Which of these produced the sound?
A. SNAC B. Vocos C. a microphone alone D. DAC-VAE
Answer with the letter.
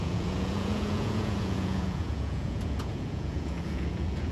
B